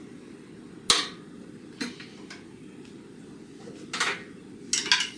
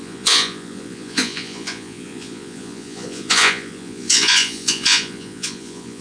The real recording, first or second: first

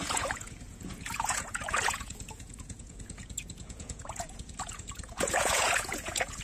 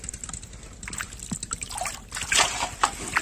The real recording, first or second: second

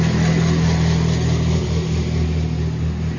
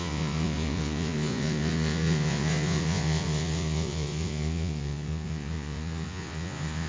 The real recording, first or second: first